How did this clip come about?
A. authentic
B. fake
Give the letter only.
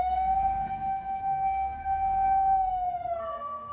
B